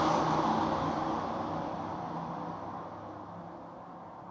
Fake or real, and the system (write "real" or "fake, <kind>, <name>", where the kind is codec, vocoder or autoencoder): real